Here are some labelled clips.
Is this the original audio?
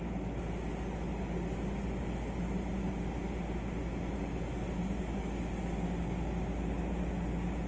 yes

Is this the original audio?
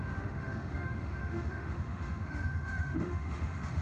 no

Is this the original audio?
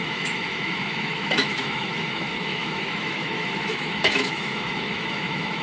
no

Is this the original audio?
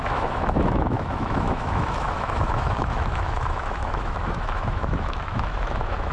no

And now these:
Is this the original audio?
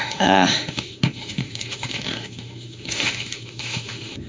no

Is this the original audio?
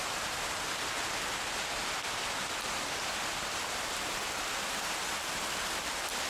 yes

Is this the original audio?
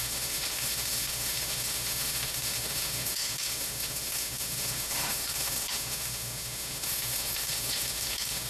no